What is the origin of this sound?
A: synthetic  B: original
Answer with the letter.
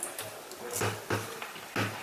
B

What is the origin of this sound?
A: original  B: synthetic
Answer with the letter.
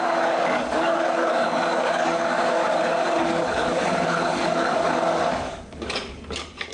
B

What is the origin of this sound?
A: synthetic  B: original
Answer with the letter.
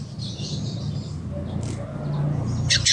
B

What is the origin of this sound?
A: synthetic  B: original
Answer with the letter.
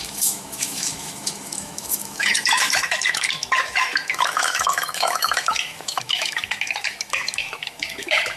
A